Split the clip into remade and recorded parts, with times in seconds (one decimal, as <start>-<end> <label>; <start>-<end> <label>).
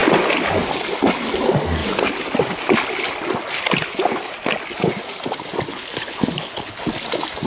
0.0-5.7 recorded; 5.7-6.8 remade; 6.8-7.5 recorded